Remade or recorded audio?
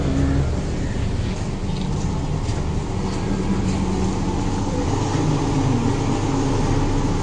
recorded